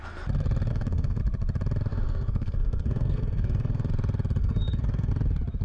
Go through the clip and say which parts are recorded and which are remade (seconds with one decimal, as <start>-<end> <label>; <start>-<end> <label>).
0.0-0.7 recorded; 0.7-1.2 remade; 1.2-1.9 recorded; 1.9-3.9 remade; 3.9-4.4 recorded; 4.4-5.1 remade; 5.1-5.6 recorded